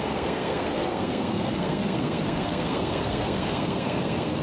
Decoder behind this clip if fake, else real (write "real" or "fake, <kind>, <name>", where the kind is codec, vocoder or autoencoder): fake, codec, SNAC